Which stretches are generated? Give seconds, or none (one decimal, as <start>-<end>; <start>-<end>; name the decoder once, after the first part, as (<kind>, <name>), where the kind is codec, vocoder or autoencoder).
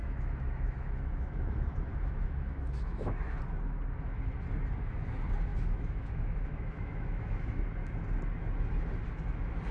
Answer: 0.0-3.4 (autoencoder, DAC-VAE); 5.5-7.6